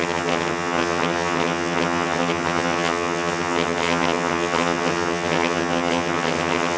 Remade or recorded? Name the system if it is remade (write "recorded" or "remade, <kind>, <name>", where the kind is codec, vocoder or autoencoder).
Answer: remade, vocoder, HiFi-GAN